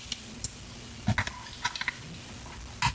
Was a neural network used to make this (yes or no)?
no